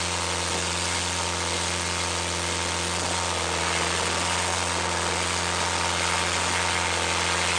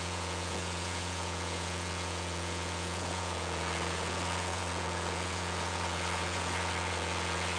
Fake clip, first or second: second